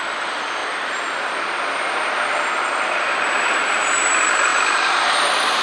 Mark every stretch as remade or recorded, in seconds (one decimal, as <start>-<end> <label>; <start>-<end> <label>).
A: 0.0-0.6 recorded; 0.6-3.9 remade; 3.9-4.5 recorded; 4.5-5.6 remade